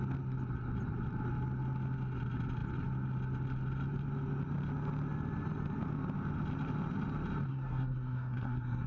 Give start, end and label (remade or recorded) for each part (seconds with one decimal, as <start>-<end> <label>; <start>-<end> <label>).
0.0-7.5 recorded; 7.5-8.9 remade